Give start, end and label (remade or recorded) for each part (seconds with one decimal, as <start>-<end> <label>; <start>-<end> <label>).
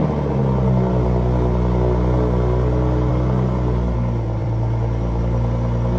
0.0-4.4 recorded; 4.4-5.2 remade; 5.2-6.0 recorded